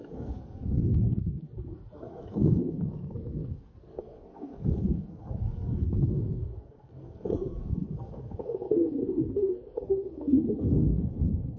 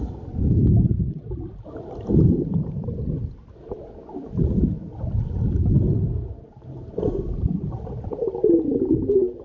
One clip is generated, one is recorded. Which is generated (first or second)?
first